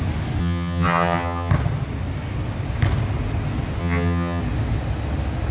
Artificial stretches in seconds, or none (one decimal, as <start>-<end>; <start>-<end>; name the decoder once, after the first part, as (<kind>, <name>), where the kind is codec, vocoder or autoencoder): 0.4-1.5 (vocoder, HiFi-GAN); 3.8-4.4